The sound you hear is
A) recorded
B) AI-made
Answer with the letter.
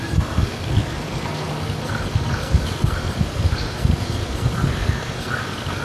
B